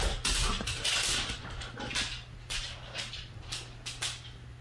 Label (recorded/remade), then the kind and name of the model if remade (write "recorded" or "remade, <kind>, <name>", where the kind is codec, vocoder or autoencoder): recorded